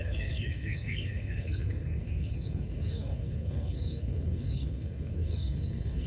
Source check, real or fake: fake